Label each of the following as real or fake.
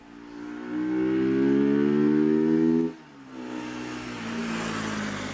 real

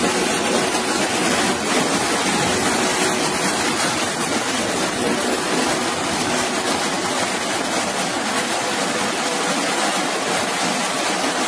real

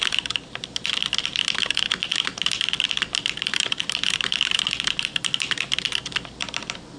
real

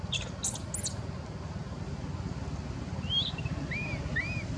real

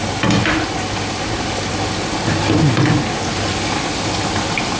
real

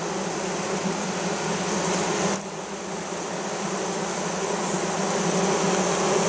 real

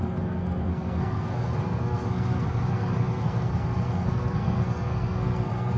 fake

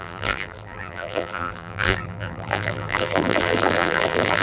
fake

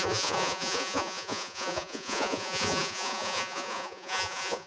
fake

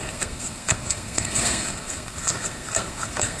fake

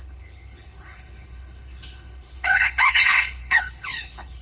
fake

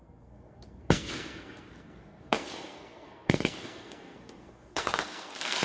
fake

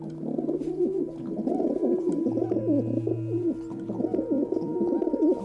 real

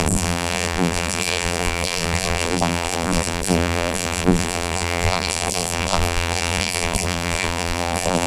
fake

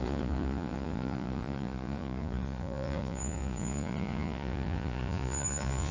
fake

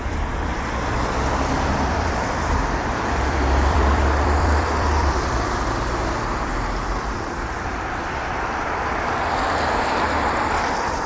fake